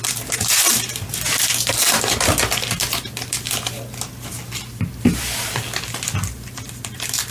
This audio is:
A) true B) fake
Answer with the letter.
A